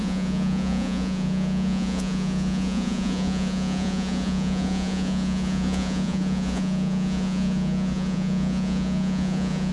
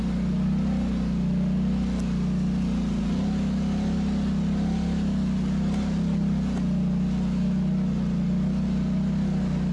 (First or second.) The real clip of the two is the second